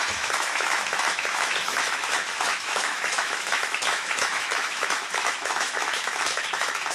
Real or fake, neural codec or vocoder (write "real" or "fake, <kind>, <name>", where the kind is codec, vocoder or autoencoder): fake, autoencoder, DAC-VAE